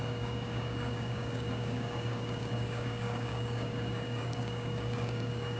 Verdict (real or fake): fake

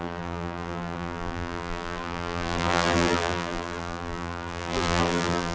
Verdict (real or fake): fake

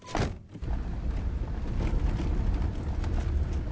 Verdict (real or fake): real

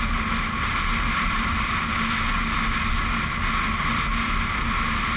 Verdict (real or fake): real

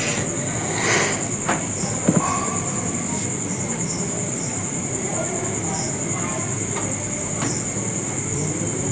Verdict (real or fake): real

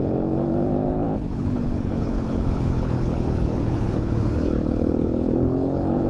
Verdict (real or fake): fake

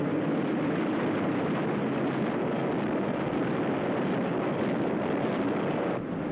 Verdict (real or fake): real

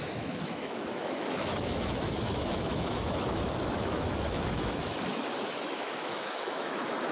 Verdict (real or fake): fake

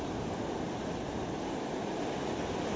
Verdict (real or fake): real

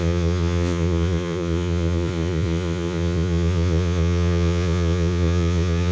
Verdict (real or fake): fake